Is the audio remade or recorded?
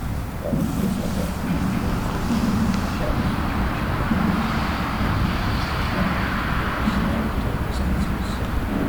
recorded